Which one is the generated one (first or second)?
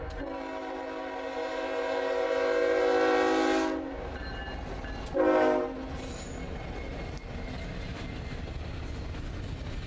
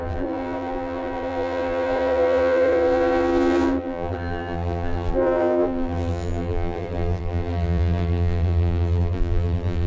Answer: second